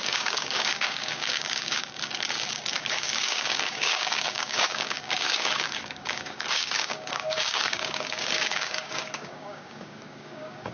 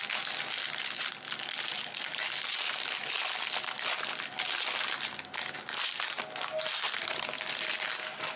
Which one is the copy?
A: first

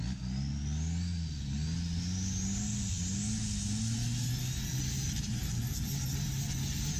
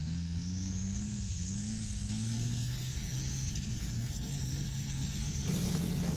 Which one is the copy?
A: second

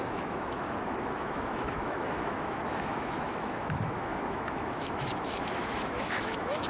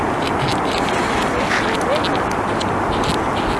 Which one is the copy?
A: first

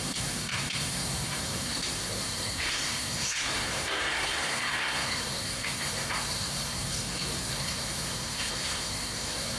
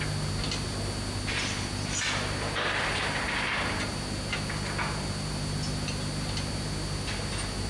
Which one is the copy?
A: first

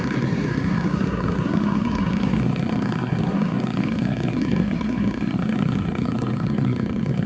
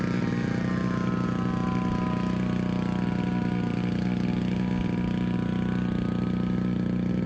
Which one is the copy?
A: first